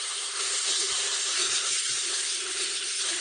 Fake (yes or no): yes